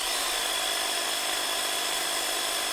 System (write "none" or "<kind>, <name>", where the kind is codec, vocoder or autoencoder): vocoder, BigVGAN v2